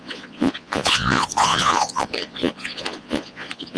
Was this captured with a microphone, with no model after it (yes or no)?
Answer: no